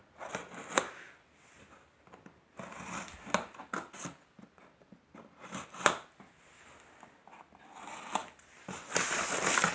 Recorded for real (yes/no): yes